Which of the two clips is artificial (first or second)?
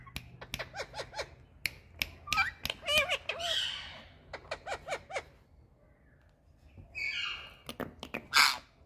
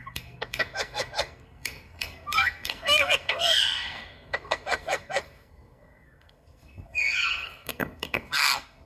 second